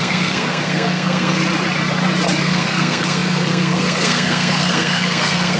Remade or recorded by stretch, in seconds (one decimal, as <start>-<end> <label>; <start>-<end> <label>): 0.0-1.4 remade; 1.4-2.4 recorded; 2.4-5.6 remade